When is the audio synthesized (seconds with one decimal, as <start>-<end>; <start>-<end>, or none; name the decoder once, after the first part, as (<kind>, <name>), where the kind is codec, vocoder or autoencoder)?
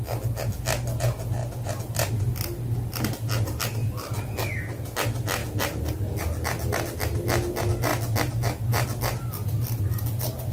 none